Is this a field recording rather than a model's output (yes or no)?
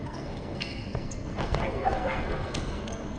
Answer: no